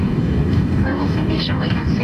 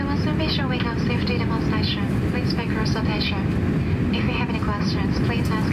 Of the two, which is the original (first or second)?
second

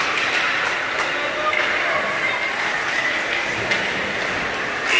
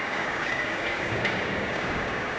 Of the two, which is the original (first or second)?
first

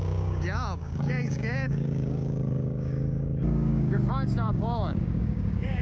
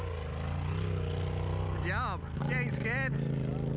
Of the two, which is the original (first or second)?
second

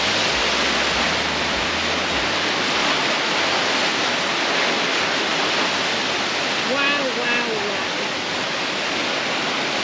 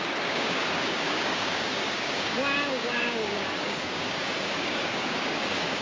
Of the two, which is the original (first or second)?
first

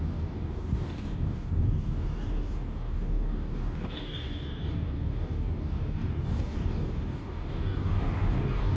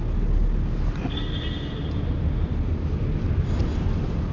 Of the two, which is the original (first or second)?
second